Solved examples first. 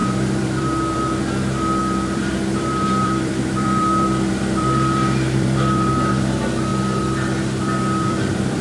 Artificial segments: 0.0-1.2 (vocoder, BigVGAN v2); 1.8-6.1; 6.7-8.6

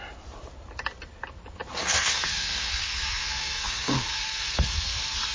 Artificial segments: 1.8-5.3 (codec, SNAC)

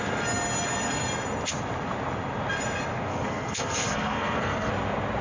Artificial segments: 3.1-4.7 (codec, SNAC)

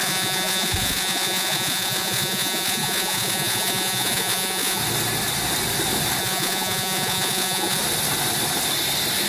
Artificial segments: 0.0-4.8 (vocoder, Vocos); 6.2-7.8

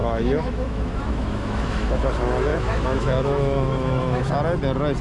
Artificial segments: 0.0-2.0 (autoencoder, DAC-VAE); 2.5-4.3

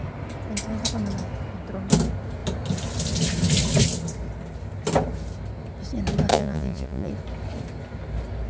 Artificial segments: 6.3-7.1 (vocoder, Vocos)

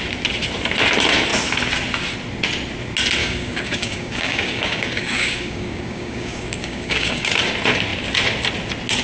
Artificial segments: 3.2-7.3 (codec, DAC)